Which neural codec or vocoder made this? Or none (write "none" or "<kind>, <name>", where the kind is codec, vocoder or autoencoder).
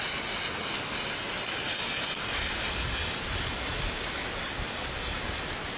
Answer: none